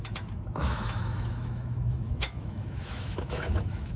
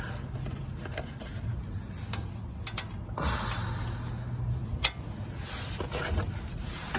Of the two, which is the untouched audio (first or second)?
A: second